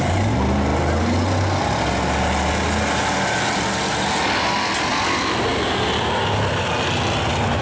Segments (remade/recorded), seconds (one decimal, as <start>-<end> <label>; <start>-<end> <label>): 0.0-7.6 recorded